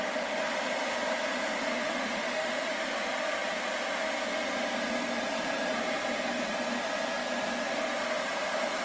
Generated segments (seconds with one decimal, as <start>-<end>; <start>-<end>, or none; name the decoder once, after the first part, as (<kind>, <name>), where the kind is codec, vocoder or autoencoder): 1.7-2.7 (autoencoder, DAC-VAE)